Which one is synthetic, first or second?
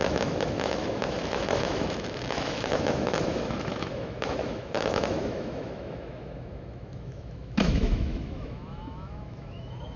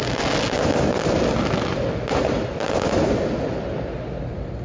first